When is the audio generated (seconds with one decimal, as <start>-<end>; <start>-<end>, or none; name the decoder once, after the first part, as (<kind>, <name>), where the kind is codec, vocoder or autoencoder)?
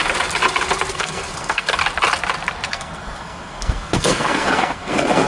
0.9-1.8 (codec, SNAC); 2.7-5.3